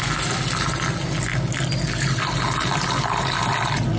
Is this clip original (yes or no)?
yes